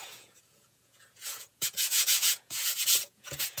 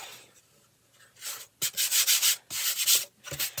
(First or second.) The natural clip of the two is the second